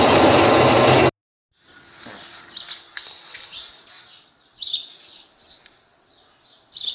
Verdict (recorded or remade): recorded